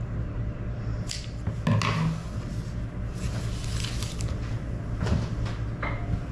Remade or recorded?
recorded